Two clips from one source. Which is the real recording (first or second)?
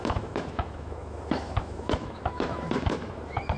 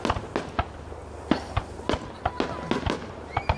second